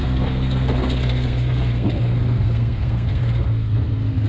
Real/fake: fake